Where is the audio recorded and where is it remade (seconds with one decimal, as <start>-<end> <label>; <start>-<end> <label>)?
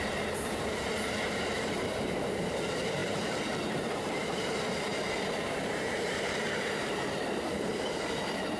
0.0-8.6 remade